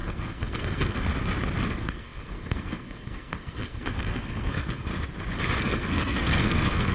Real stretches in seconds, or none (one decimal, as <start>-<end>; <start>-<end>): 1.1-1.7; 4.9-5.6